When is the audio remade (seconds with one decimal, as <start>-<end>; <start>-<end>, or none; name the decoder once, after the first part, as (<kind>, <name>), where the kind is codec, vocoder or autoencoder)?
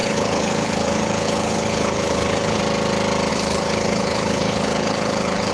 0.0-2.6 (codec, HILCodec); 3.3-5.5